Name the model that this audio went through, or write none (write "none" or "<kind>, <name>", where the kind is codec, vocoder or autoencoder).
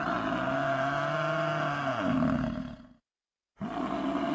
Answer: none